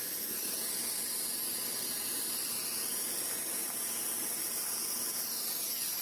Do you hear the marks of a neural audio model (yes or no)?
no